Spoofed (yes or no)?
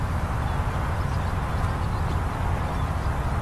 yes